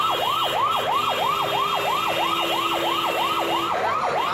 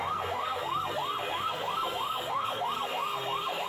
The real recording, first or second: first